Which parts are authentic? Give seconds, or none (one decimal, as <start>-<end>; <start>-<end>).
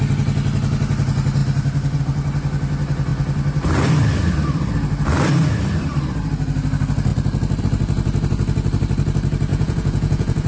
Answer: 0.0-9.5